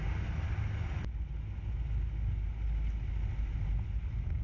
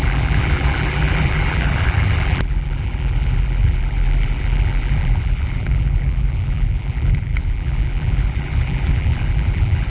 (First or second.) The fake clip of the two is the second